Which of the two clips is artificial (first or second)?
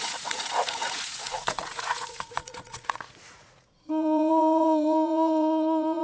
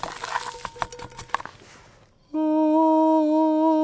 first